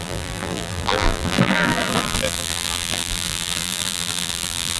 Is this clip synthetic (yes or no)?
yes